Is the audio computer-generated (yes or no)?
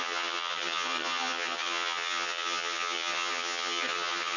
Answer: yes